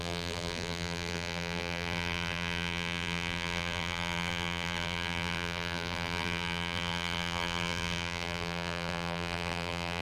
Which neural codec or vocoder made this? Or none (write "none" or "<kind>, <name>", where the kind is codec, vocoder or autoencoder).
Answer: vocoder, BigVGAN v2